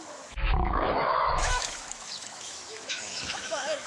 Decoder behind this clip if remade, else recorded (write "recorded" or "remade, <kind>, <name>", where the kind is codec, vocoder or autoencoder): remade, autoencoder, DAC-VAE